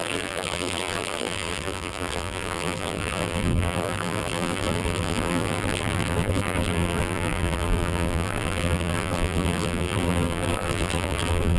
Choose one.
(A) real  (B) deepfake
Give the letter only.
B